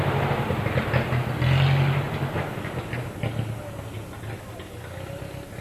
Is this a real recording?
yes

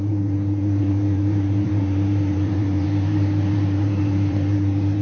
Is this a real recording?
no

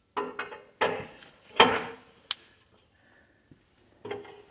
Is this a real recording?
yes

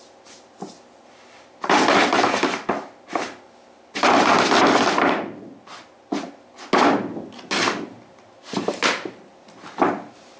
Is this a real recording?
yes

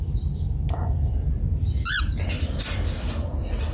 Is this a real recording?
yes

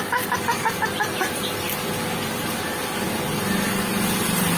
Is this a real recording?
yes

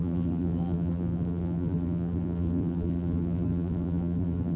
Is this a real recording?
no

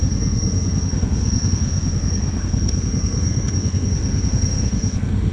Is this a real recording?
no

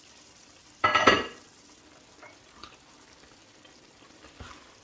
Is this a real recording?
no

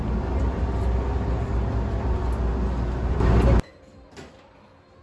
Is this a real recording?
yes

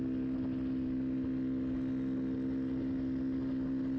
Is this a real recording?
yes